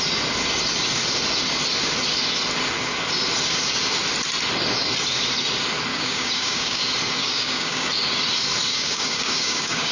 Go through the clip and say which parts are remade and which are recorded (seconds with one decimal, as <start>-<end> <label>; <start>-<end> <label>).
0.0-5.9 recorded; 5.9-6.8 remade; 6.8-7.2 recorded; 7.2-7.9 remade; 7.9-8.7 recorded; 8.7-9.9 remade